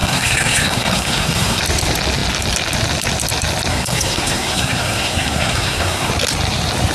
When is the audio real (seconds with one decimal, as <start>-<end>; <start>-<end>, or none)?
1.6-3.7; 6.1-6.9